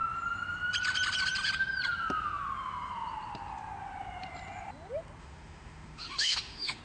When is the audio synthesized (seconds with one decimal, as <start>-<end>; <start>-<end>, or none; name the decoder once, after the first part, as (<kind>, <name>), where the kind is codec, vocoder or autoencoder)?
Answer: 5.2-6.8 (autoencoder, DAC-VAE)